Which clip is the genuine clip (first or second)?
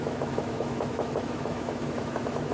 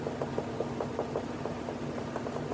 second